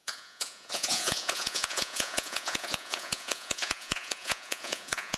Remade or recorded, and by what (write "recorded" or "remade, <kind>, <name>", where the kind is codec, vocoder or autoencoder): remade, vocoder, Vocos